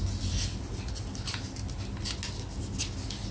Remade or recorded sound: recorded